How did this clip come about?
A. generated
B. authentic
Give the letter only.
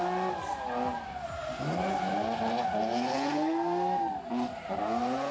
B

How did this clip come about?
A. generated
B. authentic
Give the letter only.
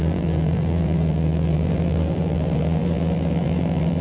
A